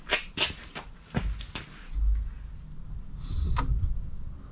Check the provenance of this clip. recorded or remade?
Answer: recorded